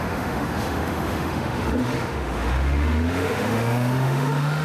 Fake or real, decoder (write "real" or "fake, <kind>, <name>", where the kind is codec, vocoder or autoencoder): fake, autoencoder, DAC-VAE